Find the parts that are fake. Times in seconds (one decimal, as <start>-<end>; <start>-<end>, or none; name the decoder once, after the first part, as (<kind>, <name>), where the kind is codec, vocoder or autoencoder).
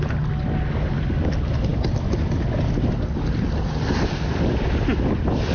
none